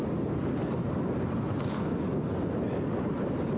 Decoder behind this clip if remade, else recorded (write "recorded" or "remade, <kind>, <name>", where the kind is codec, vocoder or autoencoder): recorded